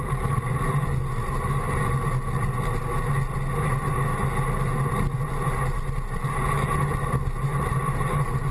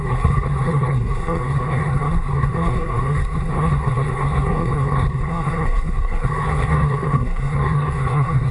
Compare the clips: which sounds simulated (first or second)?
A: second